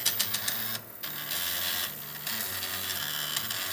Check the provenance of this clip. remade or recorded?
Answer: recorded